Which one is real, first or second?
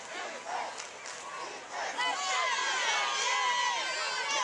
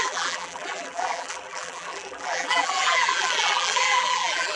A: first